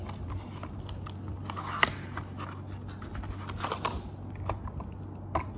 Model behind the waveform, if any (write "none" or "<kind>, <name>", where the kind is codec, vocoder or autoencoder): none